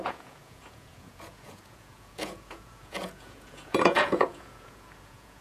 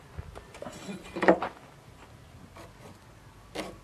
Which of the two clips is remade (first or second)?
first